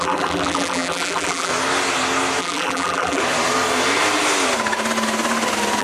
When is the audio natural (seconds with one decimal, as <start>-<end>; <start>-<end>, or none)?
1.5-2.4; 3.2-5.8